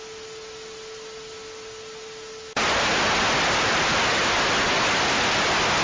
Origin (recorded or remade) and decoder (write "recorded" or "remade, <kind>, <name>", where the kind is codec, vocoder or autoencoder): recorded